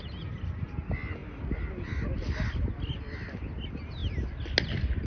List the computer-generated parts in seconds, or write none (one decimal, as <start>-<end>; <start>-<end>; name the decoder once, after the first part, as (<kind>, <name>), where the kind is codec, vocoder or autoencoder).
none